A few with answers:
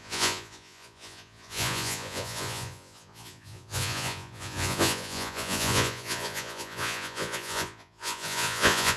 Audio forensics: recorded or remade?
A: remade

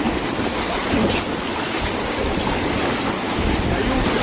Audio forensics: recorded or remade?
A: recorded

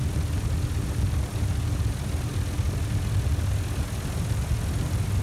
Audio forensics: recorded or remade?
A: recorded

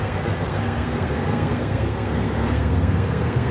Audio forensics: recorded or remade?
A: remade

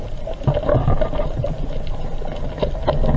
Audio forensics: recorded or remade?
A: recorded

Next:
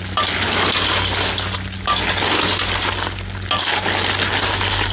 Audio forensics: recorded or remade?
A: recorded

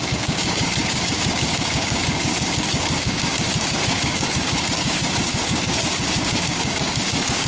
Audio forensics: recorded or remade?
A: remade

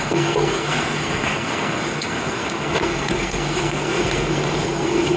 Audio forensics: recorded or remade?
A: remade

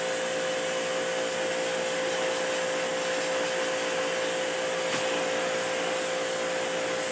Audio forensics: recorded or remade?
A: recorded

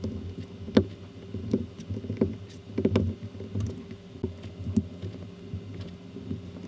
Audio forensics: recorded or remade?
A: recorded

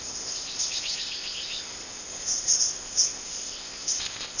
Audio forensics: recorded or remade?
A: remade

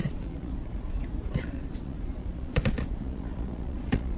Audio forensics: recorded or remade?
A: remade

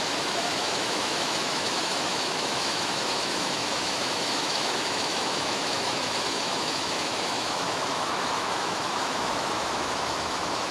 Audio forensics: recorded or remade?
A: remade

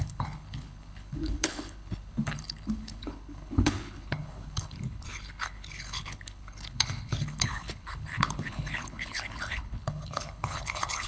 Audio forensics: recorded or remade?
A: remade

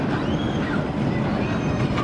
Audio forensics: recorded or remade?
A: recorded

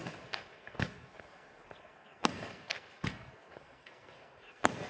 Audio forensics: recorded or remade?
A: remade